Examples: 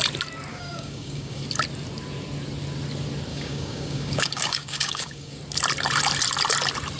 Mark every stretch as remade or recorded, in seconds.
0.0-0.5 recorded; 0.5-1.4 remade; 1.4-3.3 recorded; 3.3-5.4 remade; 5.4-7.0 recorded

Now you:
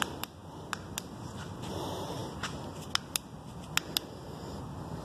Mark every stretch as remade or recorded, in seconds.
0.0-5.0 recorded

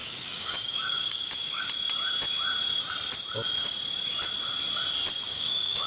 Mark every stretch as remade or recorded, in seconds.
0.0-1.6 remade; 1.6-5.3 recorded; 5.3-5.9 remade

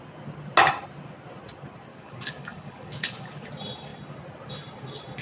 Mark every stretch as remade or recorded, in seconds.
0.0-1.9 recorded; 1.9-3.5 remade; 3.5-5.2 recorded